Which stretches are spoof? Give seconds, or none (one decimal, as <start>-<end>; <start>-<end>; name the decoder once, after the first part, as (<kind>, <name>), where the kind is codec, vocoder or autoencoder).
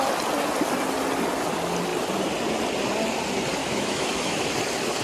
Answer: 3.6-4.5 (autoencoder, DAC-VAE)